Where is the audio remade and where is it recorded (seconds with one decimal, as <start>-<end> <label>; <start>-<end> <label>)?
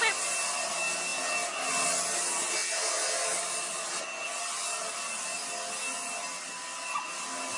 0.0-7.6 recorded